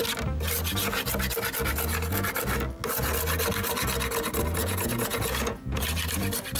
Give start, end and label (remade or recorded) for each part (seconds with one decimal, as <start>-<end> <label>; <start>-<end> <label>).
0.0-4.6 recorded; 4.6-5.8 remade; 5.8-6.6 recorded